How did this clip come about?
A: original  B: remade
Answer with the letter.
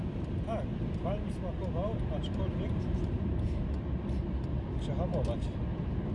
A